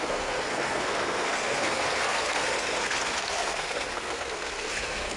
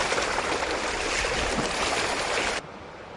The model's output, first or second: first